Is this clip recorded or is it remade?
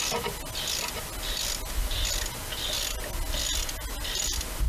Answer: recorded